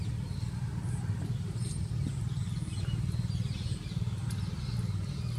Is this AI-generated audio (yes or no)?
no